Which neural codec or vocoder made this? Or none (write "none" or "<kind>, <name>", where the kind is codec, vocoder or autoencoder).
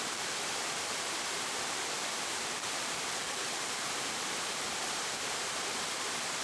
vocoder, BigVGAN v2